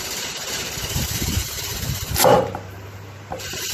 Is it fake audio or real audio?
fake